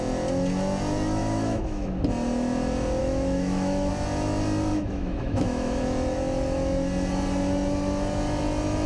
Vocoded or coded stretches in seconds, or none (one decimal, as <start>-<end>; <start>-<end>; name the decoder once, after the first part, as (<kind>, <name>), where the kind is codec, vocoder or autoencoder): 1.2-2.0 (autoencoder, DAC-VAE); 3.0-3.9; 4.7-5.8